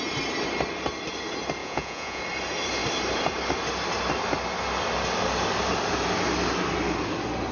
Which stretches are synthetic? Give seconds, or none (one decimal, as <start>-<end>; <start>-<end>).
1.6-2.2